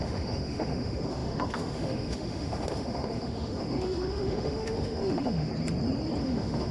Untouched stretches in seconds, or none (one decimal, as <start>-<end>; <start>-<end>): 5.5-6.2